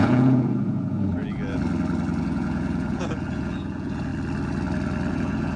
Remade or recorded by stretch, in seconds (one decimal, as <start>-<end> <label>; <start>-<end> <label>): 0.0-1.2 remade; 1.2-2.2 recorded; 2.2-4.1 remade; 4.1-5.1 recorded; 5.1-5.6 remade